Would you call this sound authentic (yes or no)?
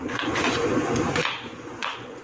no